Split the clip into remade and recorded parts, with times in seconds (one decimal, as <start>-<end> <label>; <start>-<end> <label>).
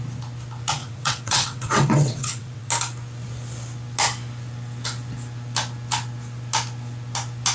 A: 0.0-0.8 recorded; 0.8-2.7 remade; 2.7-7.5 recorded